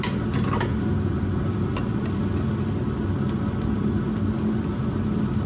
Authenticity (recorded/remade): recorded